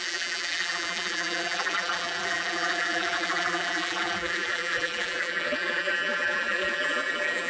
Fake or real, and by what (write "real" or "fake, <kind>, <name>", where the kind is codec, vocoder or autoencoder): fake, vocoder, BigVGAN v2